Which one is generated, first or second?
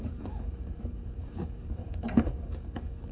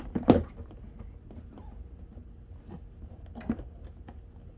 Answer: first